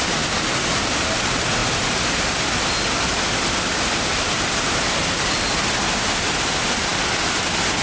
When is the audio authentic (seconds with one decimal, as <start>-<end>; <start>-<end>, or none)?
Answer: 0.0-7.8